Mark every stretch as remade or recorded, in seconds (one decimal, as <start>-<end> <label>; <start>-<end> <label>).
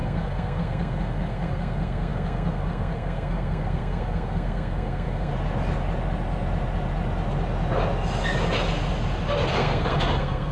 0.0-5.3 remade; 5.3-9.5 recorded; 9.5-10.5 remade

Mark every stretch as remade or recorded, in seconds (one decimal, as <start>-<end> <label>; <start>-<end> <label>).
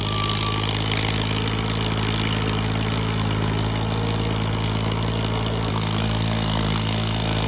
0.0-5.7 recorded; 5.7-7.5 remade